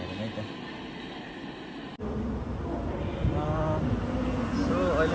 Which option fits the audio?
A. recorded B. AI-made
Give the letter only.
A